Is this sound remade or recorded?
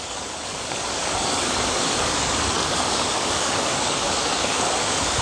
remade